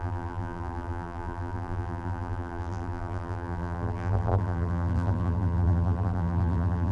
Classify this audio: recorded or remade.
remade